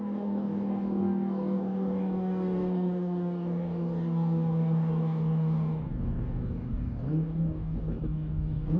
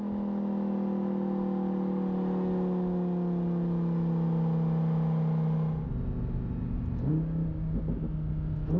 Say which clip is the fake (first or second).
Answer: first